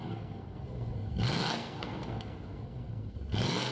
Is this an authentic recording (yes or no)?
no